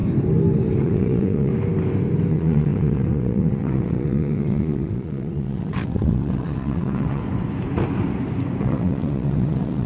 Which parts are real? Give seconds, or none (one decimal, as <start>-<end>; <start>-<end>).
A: 0.0-0.8; 1.5-2.3; 7.2-8.6